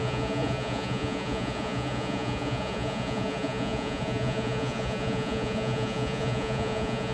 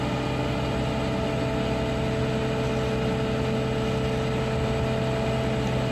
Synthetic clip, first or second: first